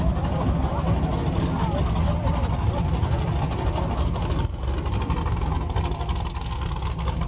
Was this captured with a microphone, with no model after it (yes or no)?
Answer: yes